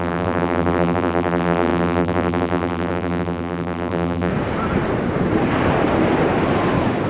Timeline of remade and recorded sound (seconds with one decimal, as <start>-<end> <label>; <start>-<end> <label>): 0.0-4.3 remade; 4.3-7.1 recorded